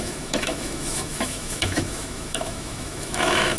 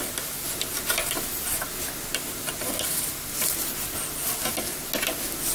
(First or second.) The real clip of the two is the second